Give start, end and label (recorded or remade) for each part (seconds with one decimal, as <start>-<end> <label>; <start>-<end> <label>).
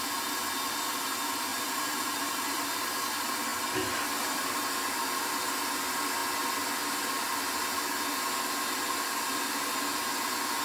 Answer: 0.0-1.5 recorded; 1.5-2.7 remade; 2.7-10.6 recorded